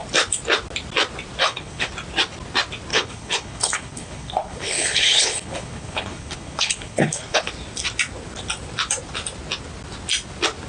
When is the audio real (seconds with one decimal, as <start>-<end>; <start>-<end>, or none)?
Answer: 0.0-1.4; 1.9-2.9; 7.5-10.7